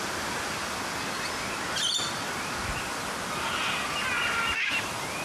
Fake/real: real